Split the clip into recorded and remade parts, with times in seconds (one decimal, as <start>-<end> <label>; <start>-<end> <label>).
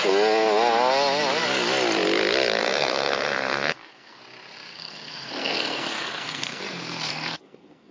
0.0-2.6 recorded; 2.6-4.2 remade; 4.2-4.7 recorded; 4.7-6.6 remade; 6.6-7.1 recorded; 7.1-7.9 remade